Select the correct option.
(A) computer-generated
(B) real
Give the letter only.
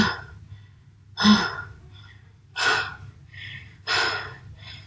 B